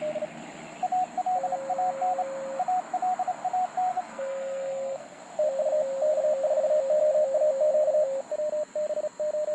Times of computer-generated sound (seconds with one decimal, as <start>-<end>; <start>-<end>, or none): 3.9-5.2